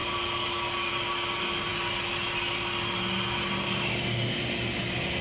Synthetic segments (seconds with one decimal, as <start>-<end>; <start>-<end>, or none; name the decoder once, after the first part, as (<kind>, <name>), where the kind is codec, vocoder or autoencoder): none